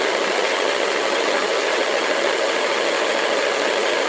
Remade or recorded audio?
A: remade